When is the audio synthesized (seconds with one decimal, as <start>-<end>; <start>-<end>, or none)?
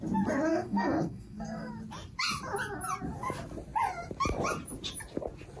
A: 0.5-1.7